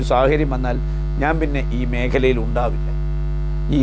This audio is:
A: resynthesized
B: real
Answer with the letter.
B